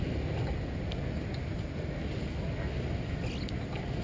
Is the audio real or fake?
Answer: real